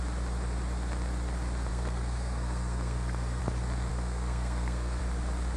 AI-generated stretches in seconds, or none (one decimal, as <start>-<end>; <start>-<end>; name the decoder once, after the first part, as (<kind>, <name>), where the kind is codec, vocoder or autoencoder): 1.7-3.4 (codec, SNAC); 3.9-5.0